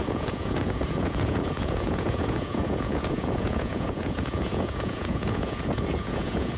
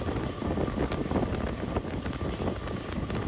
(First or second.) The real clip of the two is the second